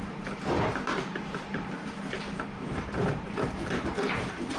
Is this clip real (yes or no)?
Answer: no